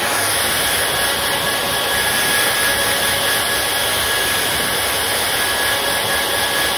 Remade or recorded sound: recorded